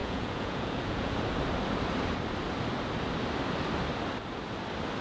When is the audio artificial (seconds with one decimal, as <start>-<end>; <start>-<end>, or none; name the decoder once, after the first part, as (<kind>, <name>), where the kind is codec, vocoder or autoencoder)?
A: 0.0-1.2 (vocoder, Vocos)